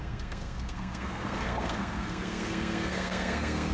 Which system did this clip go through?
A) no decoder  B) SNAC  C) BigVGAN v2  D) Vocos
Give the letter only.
B